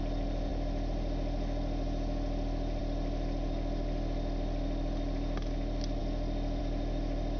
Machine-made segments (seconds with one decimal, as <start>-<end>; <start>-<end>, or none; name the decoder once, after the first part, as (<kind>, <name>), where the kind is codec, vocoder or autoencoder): none